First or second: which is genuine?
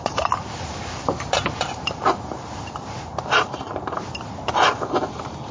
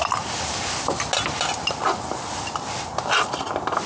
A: second